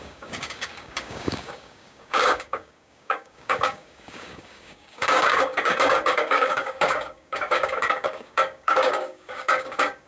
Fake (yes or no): yes